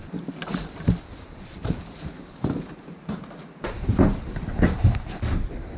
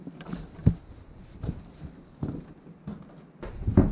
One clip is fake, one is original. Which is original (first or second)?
second